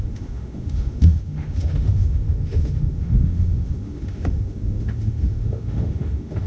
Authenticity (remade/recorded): remade